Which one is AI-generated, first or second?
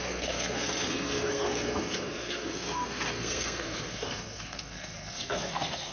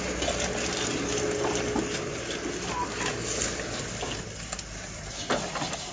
first